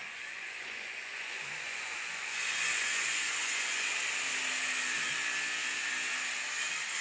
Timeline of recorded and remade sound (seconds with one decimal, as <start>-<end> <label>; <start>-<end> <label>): 0.0-3.9 remade; 3.9-7.0 recorded

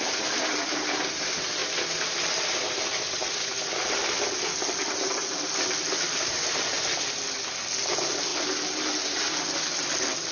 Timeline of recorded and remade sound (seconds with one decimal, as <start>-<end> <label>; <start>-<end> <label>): 0.0-10.3 recorded